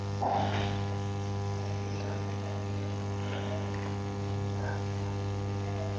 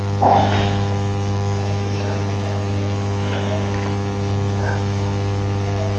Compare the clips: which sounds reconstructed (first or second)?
second